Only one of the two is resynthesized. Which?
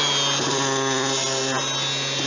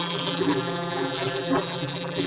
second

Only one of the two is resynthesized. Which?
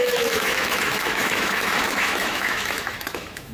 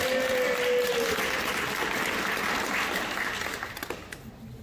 first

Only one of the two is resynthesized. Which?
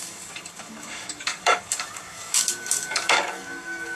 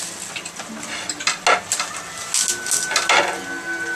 first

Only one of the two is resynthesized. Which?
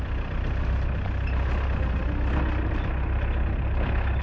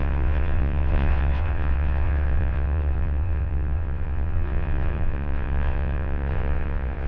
second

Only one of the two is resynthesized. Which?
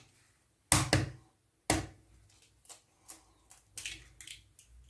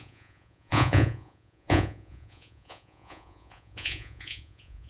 second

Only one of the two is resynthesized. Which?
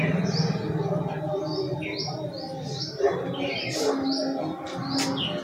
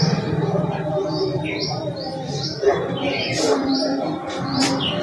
second